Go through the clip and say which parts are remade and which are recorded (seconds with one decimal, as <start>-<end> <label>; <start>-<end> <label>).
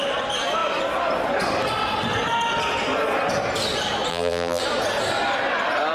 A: 0.0-4.1 recorded; 4.1-4.6 remade; 4.6-5.9 recorded